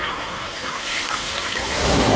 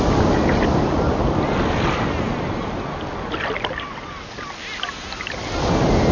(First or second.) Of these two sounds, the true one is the second